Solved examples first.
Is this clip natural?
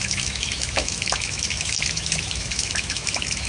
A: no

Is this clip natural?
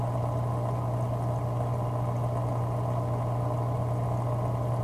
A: yes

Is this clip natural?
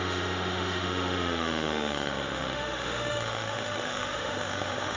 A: no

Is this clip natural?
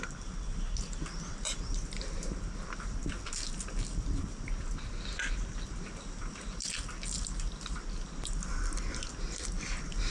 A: yes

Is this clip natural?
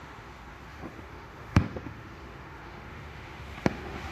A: no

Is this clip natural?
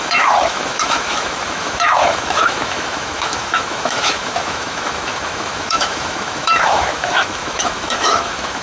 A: no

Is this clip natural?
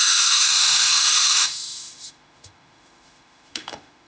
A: no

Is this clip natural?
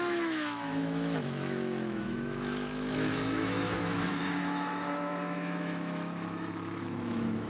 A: no